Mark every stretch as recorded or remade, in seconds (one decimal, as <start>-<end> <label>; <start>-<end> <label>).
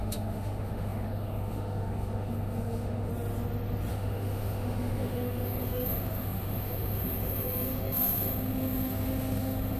0.0-3.1 remade; 3.1-3.9 recorded; 3.9-9.8 remade